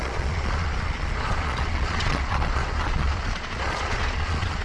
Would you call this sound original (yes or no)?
no